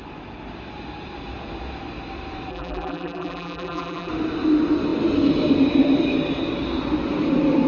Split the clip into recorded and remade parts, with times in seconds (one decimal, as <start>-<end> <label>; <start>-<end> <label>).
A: 0.0-2.5 recorded; 2.5-4.1 remade; 4.1-7.7 recorded